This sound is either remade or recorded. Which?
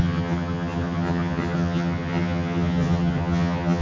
remade